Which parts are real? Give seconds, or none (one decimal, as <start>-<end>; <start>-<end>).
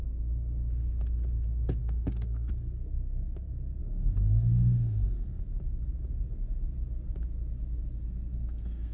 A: 0.0-1.8; 2.5-3.8; 5.4-8.3